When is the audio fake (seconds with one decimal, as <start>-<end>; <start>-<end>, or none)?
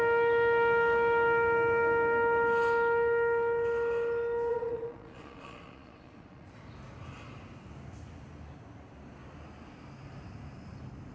4.5-6.5